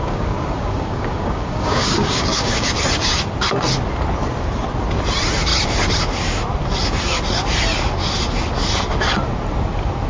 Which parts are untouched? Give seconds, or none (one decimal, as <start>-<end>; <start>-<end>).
2.7-10.1